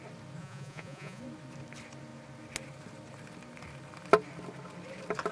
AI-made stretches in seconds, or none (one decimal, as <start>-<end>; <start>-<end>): 0.4-1.2